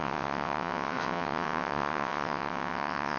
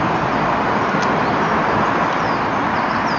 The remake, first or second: first